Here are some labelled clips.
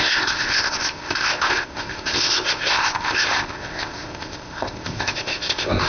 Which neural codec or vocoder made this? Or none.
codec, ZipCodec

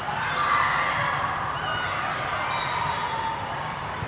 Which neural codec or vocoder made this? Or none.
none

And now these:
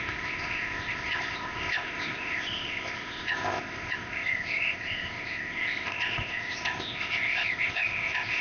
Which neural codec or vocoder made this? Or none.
codec, ZipCodec